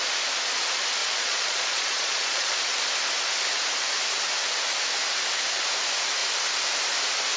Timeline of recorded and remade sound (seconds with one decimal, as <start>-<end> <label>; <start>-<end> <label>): 0.0-1.0 recorded; 1.0-2.6 remade; 2.6-7.4 recorded